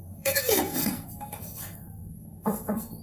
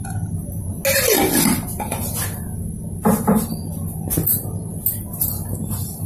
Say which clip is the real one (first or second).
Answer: second